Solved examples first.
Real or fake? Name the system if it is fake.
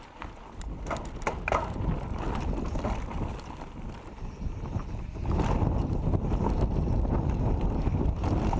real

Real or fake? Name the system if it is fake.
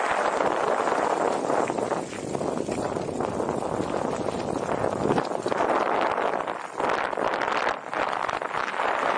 real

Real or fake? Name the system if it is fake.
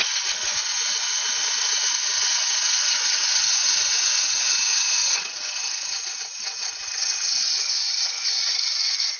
fake, vocoder, Vocos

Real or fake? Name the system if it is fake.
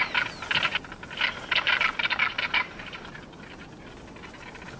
real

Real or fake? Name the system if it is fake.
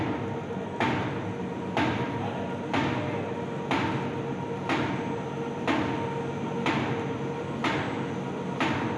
real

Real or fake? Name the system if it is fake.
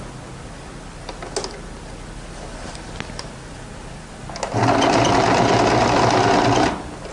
real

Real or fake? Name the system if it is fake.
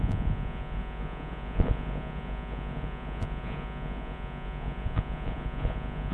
fake, vocoder, Vocos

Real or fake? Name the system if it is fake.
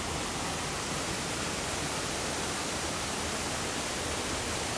real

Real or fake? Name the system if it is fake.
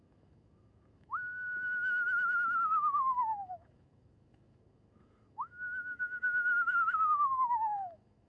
fake, autoencoder, DAC-VAE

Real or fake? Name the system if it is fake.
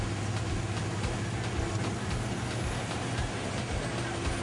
real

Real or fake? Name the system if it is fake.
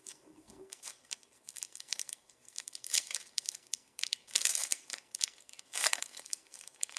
fake, codec, SNAC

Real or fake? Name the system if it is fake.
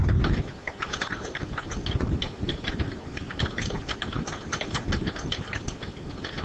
real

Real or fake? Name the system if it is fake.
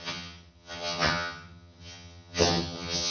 fake, vocoder, HiFi-GAN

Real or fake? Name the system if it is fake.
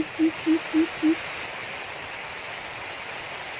real